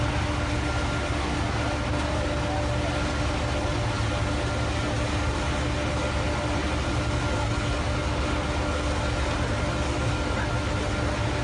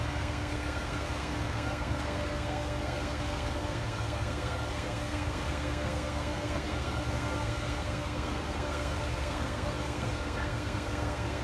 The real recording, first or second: first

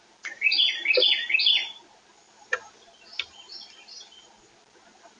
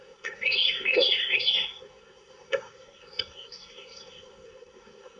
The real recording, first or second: first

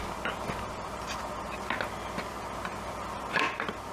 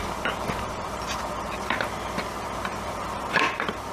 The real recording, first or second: first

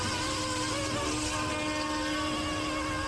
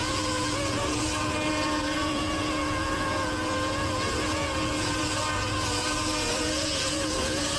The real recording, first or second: first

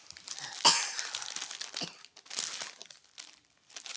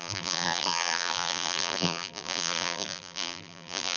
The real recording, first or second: first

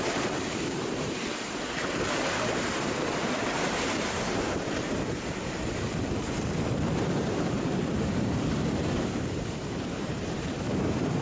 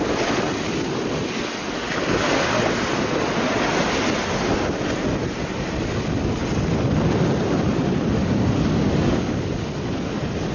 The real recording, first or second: second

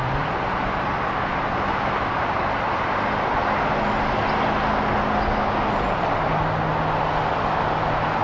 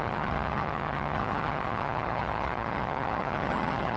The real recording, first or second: first